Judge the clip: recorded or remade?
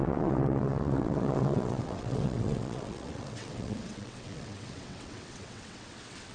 remade